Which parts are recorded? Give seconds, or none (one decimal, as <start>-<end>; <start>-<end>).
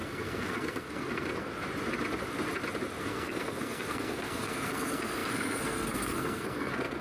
1.5-3.0